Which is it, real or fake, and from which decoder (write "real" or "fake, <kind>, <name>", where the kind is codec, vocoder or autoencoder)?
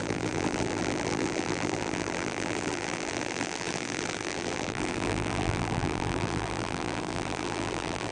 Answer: fake, vocoder, BigVGAN v2